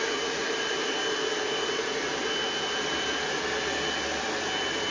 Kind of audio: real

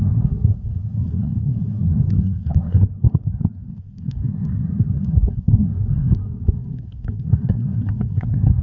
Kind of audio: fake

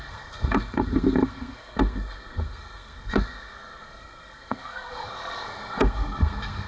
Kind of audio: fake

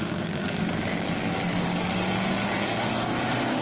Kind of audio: fake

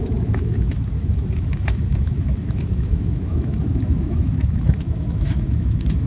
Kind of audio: fake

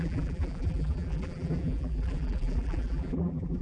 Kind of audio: fake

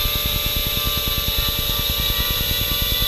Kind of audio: real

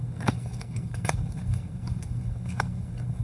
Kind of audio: fake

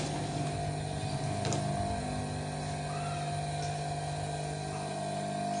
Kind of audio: real